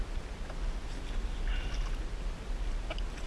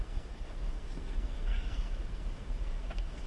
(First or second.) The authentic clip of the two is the first